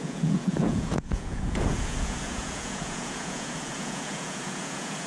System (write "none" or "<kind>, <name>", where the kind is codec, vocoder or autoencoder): vocoder, Vocos